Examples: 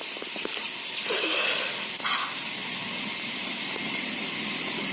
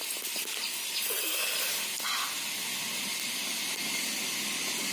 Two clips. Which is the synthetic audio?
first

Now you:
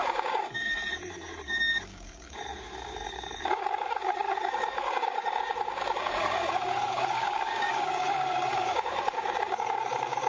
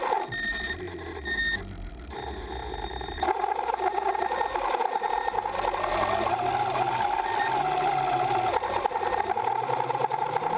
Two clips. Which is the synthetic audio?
first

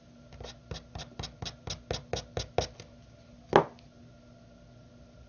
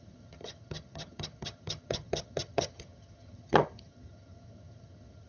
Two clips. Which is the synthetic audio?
second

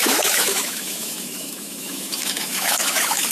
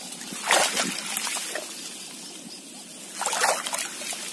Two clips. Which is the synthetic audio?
first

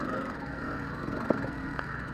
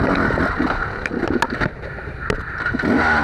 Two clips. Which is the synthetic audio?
first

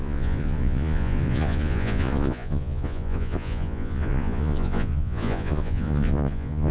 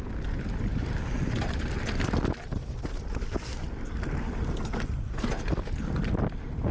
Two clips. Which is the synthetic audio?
first